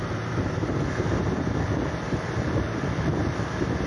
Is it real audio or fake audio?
fake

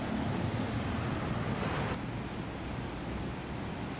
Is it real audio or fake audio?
real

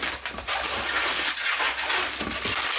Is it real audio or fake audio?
real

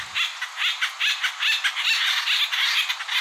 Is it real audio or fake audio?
real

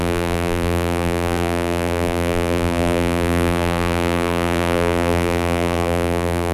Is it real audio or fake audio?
fake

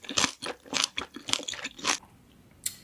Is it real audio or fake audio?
fake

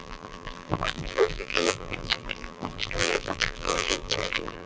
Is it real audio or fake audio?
fake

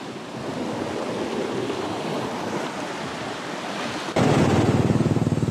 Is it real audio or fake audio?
real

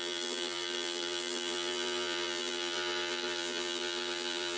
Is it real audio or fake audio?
fake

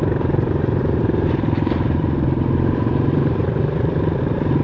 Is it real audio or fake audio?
fake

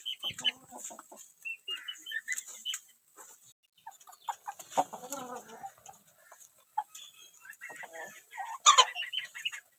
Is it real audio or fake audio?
real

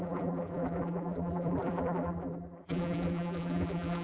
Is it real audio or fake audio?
fake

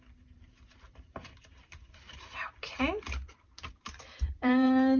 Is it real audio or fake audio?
fake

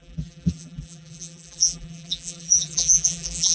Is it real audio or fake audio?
fake